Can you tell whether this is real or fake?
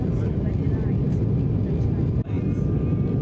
real